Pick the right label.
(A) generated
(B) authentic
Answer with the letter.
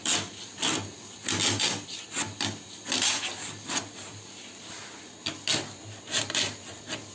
B